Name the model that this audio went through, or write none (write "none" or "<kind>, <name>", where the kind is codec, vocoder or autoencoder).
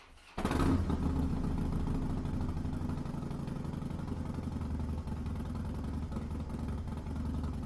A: none